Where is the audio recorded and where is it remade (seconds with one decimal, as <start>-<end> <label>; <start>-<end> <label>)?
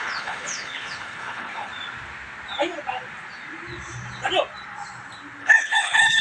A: 0.0-1.7 remade; 1.7-5.4 recorded; 5.4-6.2 remade